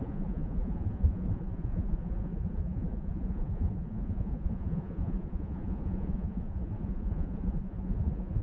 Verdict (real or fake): fake